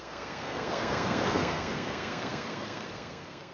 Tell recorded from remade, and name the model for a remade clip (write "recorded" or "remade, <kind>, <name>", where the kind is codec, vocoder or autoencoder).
remade, codec, SNAC